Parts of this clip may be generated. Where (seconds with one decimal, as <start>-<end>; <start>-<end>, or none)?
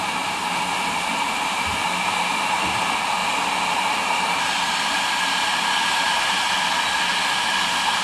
none